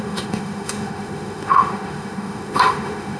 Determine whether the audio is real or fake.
fake